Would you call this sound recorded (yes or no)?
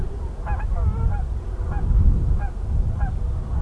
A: yes